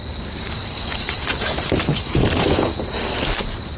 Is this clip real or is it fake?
fake